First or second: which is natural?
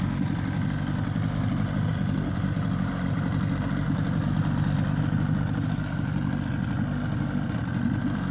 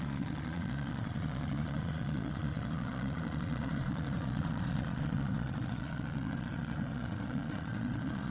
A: first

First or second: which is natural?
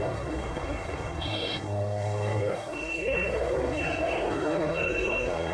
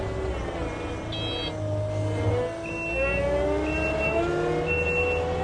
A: second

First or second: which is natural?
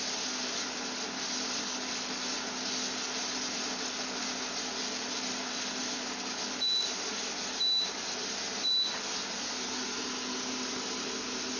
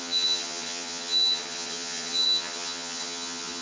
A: first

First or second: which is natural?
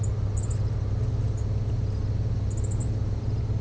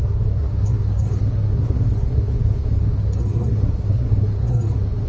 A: first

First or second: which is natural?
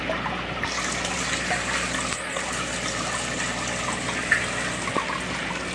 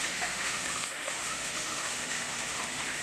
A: first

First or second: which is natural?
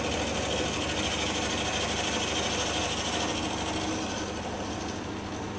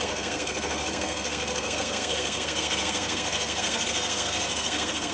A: first